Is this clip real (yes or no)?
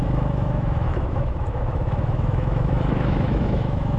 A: no